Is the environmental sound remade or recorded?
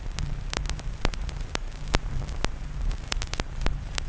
remade